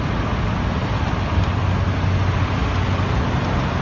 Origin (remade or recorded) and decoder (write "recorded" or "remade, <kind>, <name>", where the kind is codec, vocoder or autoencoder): recorded